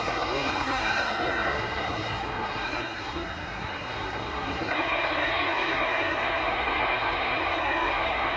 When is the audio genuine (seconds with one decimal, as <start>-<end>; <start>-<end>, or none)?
none